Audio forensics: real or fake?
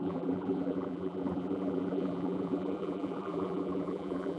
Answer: fake